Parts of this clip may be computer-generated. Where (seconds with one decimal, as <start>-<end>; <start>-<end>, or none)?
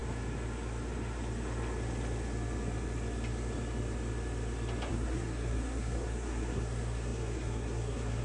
4.9-8.2